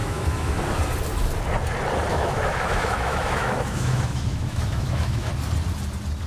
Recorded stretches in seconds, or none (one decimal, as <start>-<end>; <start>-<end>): 0.6-2.1; 5.3-6.3